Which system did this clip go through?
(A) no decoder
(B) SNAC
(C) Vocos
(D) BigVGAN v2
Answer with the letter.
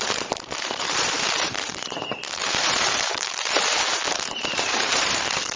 D